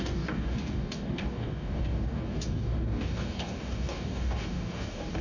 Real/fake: fake